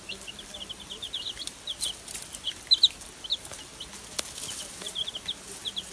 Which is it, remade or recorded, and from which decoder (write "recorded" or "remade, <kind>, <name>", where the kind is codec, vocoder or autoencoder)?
recorded